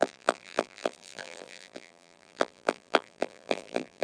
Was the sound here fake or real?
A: fake